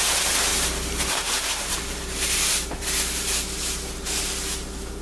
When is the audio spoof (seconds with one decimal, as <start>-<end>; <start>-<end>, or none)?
0.5-2.9